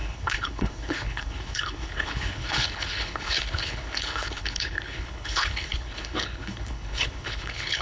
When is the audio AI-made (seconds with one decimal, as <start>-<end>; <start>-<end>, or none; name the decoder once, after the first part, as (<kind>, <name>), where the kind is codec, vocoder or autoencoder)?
0.0-7.8 (codec, HILCodec)